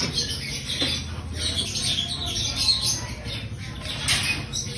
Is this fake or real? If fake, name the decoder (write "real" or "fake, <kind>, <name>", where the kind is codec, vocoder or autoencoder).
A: real